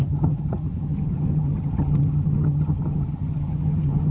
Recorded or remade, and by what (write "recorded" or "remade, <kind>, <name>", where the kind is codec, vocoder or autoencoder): remade, vocoder, HiFi-GAN